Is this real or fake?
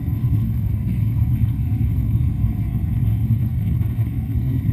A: fake